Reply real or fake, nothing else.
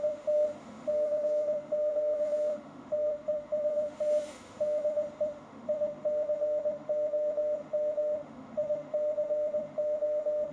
fake